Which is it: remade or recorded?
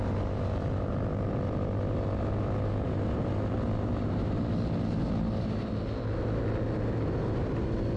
recorded